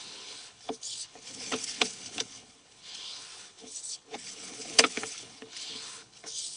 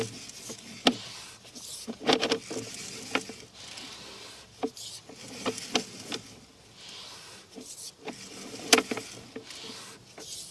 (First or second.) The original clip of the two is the second